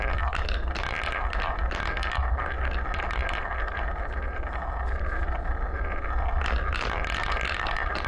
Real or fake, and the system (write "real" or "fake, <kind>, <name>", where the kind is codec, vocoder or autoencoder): real